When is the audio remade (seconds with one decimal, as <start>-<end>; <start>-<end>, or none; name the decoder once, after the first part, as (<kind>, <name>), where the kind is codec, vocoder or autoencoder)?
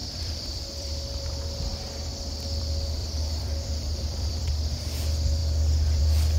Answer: 0.0-0.9 (vocoder, BigVGAN v2); 3.0-4.4